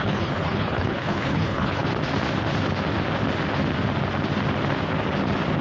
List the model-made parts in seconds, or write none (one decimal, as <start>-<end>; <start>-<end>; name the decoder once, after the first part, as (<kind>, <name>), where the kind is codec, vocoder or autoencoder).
0.0-1.9 (codec, HILCodec)